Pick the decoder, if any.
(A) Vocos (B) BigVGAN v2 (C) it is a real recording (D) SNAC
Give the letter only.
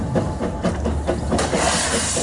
C